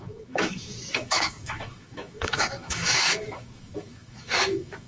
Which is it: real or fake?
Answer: fake